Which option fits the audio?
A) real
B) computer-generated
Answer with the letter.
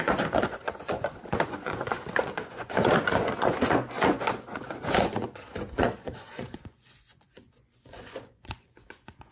B